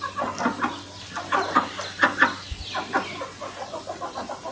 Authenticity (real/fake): real